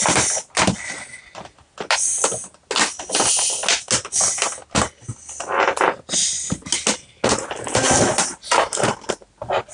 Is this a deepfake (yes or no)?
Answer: no